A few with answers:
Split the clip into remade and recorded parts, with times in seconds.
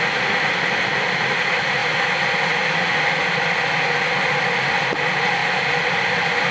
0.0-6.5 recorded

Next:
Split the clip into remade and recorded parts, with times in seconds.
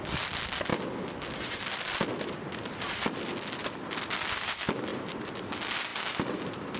0.0-0.7 recorded; 0.7-3.4 remade; 3.4-4.9 recorded; 4.9-5.5 remade; 5.5-5.9 recorded; 5.9-6.8 remade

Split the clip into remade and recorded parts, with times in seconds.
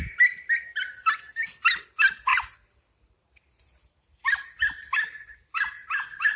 0.0-6.4 recorded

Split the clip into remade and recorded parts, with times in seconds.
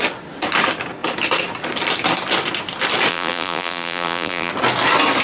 0.0-3.1 recorded; 3.1-4.5 remade; 4.5-5.2 recorded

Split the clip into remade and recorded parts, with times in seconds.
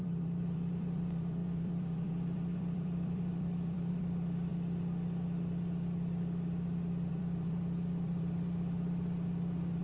0.0-4.5 remade; 4.5-7.1 recorded; 7.1-9.8 remade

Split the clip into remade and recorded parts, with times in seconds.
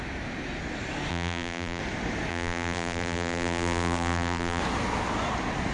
0.0-1.1 recorded; 1.1-1.8 remade; 1.8-2.3 recorded; 2.3-4.6 remade; 4.6-5.7 recorded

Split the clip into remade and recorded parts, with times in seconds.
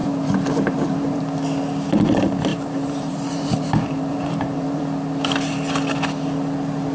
0.0-1.2 remade; 1.2-2.5 recorded; 2.5-4.8 remade; 4.8-6.9 recorded